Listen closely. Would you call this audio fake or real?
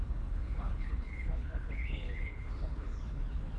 fake